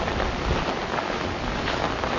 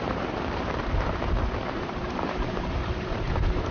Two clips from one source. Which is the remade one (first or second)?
second